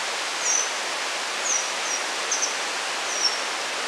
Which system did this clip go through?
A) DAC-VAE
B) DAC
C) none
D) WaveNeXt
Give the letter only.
C